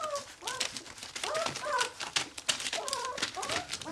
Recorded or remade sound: recorded